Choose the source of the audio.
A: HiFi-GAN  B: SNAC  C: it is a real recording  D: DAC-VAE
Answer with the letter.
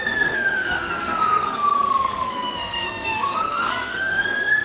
B